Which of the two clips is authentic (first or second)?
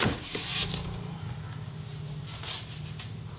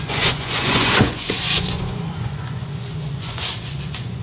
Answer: first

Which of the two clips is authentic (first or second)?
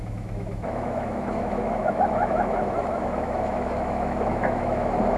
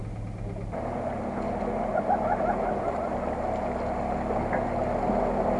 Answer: second